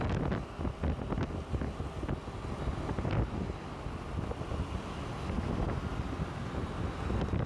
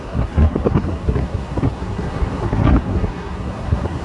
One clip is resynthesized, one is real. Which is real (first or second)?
first